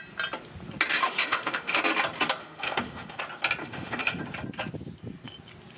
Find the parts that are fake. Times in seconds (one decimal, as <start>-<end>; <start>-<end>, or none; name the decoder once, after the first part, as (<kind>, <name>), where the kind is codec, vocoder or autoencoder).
1.0-1.8 (autoencoder, DAC-VAE); 2.4-3.2; 3.6-4.2